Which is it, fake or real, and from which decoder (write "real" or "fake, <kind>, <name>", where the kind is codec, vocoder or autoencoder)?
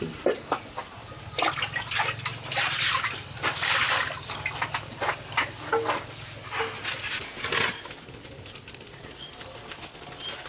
real